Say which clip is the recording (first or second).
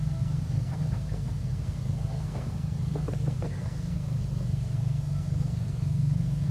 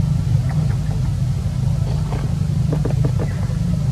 second